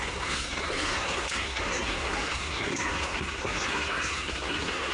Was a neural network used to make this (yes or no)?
yes